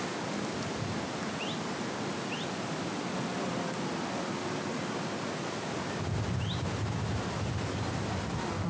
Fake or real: real